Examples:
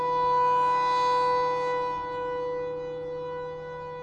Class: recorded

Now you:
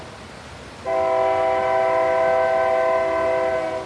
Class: recorded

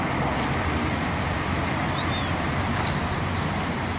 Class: recorded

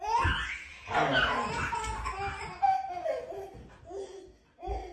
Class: recorded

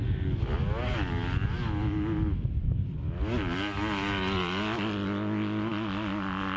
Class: recorded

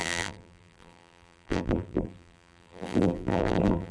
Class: remade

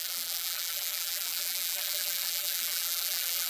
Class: remade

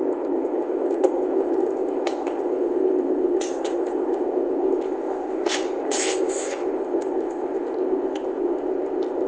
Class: remade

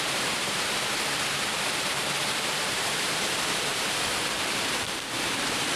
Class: remade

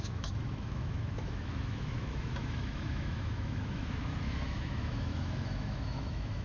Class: remade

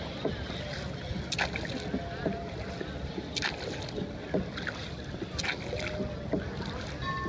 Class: recorded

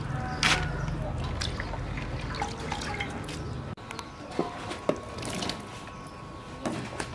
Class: recorded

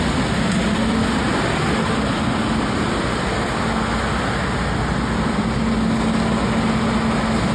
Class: recorded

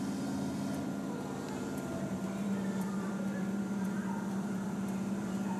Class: remade